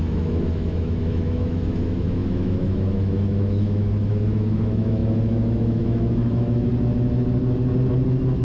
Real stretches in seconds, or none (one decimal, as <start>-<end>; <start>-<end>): 6.7-8.4